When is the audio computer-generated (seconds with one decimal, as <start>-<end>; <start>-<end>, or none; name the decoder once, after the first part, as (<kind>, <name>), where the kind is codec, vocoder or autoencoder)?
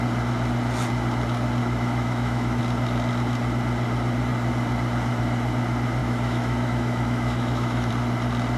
1.6-2.6 (autoencoder, DAC-VAE); 6.0-7.9